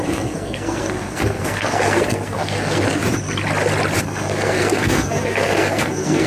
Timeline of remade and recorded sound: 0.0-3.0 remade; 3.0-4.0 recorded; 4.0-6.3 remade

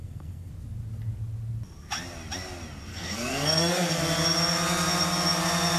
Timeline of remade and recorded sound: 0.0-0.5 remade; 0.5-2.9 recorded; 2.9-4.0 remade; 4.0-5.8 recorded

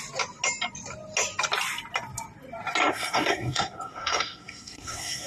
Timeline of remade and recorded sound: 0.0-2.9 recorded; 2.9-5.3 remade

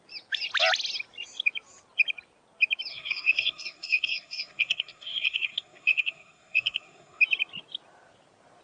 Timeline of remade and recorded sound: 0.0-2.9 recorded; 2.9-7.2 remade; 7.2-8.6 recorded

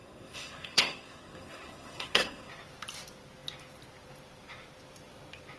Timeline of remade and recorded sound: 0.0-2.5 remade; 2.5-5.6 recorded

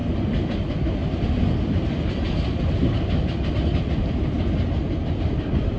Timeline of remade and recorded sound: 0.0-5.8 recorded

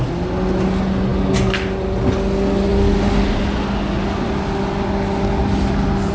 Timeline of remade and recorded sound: 0.0-6.1 recorded

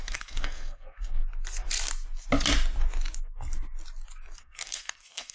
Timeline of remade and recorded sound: 0.0-1.2 remade; 1.2-4.4 recorded; 4.4-5.3 remade